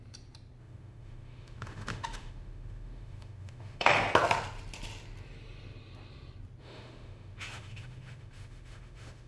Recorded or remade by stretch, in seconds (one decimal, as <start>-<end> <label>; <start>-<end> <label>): 0.0-0.6 recorded; 0.6-3.9 remade; 3.9-6.6 recorded; 6.6-9.3 remade